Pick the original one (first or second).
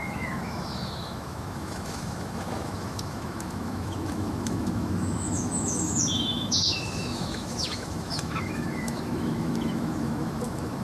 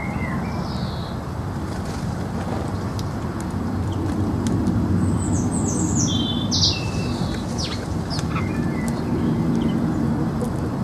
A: second